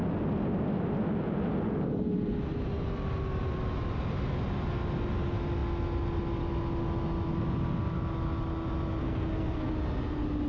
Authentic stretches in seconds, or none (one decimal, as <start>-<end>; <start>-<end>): 0.0-9.0; 9.7-10.5